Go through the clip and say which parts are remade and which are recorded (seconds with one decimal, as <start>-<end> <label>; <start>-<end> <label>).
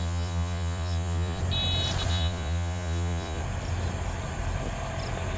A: 0.0-1.4 remade; 1.4-2.1 recorded; 2.1-3.4 remade; 3.4-5.4 recorded